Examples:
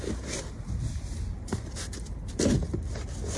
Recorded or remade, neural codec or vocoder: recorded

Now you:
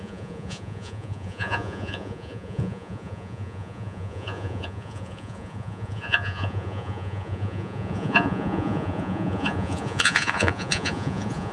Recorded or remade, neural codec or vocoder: remade, vocoder, Vocos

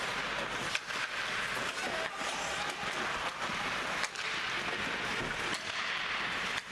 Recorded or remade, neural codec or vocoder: recorded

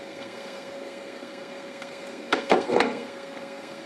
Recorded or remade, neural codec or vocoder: remade, codec, SNAC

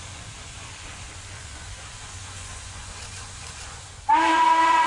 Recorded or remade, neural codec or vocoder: remade, vocoder, Vocos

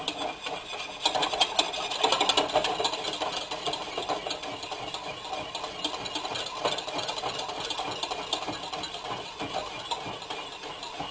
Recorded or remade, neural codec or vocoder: recorded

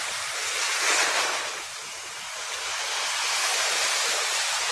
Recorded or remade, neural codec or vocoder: recorded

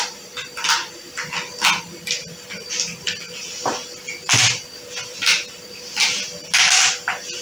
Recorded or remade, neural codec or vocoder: recorded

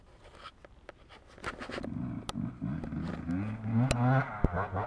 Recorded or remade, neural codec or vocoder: recorded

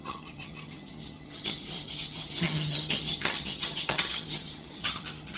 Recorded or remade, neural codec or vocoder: remade, vocoder, HiFi-GAN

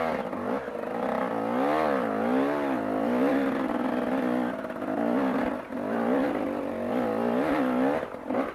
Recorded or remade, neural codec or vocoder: recorded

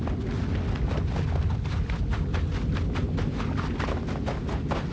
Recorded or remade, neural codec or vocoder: recorded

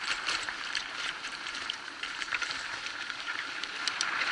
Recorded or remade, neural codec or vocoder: remade, vocoder, BigVGAN v2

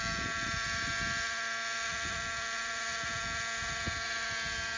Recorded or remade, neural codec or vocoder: recorded